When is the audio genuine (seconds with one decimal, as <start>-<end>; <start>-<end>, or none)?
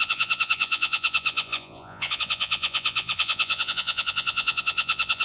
none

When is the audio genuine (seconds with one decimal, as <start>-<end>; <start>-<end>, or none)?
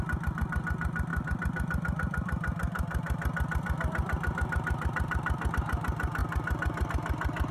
0.0-1.1; 5.5-7.5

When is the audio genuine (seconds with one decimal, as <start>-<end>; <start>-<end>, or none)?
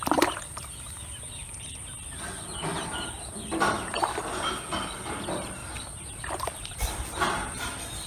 0.0-8.1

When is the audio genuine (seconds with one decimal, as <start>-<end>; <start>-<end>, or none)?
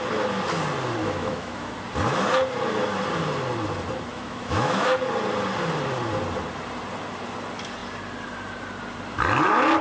0.0-1.0; 1.7-4.1; 5.0-9.8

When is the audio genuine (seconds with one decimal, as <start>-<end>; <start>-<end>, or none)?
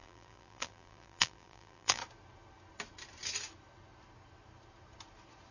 2.0-5.5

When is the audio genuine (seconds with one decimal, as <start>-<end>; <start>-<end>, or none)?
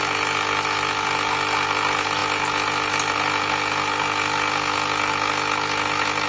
0.0-6.3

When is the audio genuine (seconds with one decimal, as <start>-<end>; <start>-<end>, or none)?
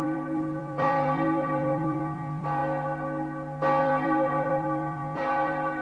2.6-3.8